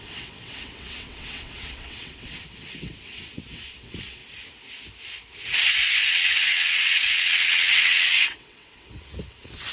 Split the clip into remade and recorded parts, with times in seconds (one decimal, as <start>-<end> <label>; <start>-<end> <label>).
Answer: 0.0-4.2 remade; 4.2-6.1 recorded; 6.1-9.7 remade